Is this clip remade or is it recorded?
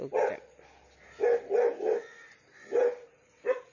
recorded